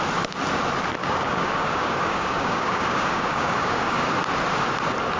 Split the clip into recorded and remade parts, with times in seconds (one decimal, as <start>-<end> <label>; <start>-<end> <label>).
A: 0.0-1.0 recorded; 1.0-4.1 remade; 4.1-5.2 recorded